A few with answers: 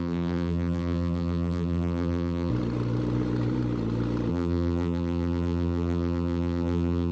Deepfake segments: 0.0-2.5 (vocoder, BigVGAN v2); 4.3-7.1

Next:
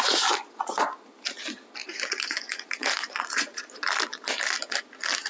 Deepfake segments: 1.8-3.6 (vocoder, Vocos)

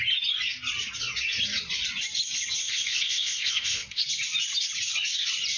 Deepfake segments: 2.6-4.0 (codec, ZipCodec)